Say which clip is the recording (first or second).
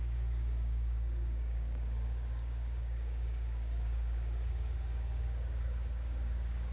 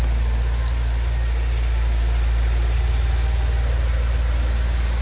second